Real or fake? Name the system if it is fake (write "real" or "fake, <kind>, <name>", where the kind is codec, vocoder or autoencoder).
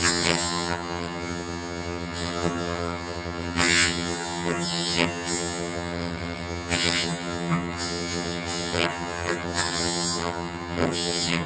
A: fake, vocoder, HiFi-GAN